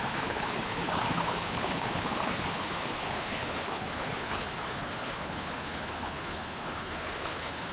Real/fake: fake